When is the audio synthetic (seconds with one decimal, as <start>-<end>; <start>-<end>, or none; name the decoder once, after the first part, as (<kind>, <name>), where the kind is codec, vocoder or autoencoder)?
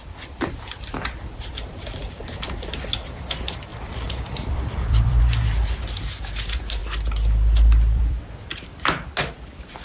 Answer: 1.7-2.2 (vocoder, BigVGAN v2); 3.7-5.2; 6.8-8.2